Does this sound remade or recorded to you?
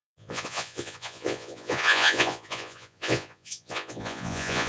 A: remade